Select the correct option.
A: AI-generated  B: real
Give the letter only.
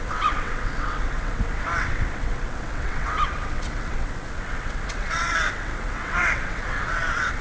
A